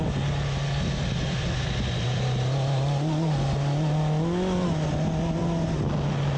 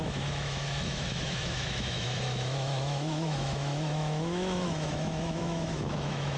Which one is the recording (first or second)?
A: first